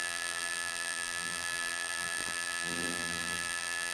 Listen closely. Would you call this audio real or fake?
fake